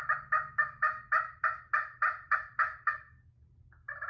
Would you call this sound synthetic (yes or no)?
no